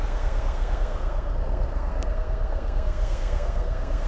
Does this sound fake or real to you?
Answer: fake